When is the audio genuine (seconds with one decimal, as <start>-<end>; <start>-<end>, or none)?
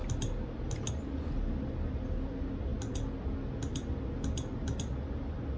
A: 0.0-5.6